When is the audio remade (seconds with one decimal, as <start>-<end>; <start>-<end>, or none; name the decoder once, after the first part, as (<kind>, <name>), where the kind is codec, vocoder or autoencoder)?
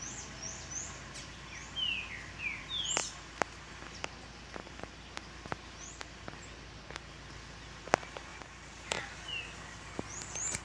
4.6-5.1 (vocoder, BigVGAN v2); 8.3-9.0